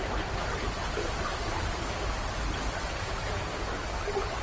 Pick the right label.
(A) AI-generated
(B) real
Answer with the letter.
B